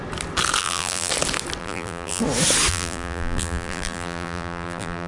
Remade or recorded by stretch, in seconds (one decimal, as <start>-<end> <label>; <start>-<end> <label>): 0.0-0.6 recorded; 0.6-1.1 remade; 1.1-1.6 recorded; 1.6-2.2 remade; 2.2-2.7 recorded; 2.7-5.1 remade